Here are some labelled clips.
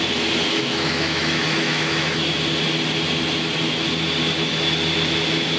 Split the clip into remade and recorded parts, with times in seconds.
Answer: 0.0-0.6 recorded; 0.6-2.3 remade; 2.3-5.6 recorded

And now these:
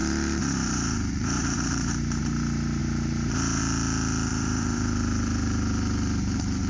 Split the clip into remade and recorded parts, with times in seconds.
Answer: 0.0-2.2 remade; 2.2-2.8 recorded; 2.8-3.6 remade; 3.6-4.3 recorded; 4.3-6.7 remade

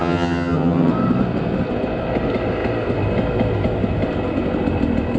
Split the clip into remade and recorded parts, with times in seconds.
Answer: 0.0-0.9 remade; 0.9-5.2 recorded

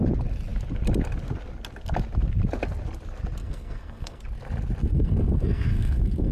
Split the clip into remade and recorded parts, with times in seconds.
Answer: 0.0-3.4 recorded; 3.4-4.2 remade; 4.2-4.8 recorded; 4.8-6.3 remade

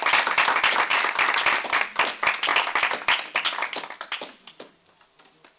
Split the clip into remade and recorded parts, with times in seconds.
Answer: 0.0-0.9 recorded; 0.9-1.8 remade; 1.8-5.6 recorded

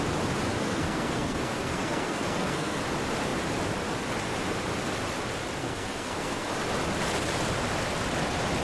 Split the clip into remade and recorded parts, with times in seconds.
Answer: 0.0-0.5 recorded; 0.5-2.8 remade; 2.8-5.6 recorded; 5.6-6.5 remade; 6.5-8.6 recorded

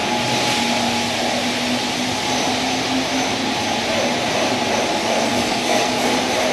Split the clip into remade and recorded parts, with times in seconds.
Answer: 0.0-5.0 recorded; 5.0-5.9 remade; 5.9-6.5 recorded

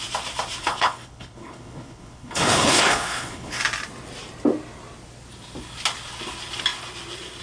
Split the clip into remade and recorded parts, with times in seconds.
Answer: 0.0-0.6 recorded; 0.6-3.6 remade; 3.6-7.4 recorded